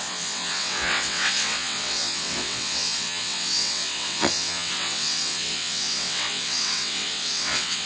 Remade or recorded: remade